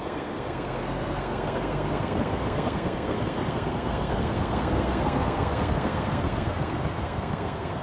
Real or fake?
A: fake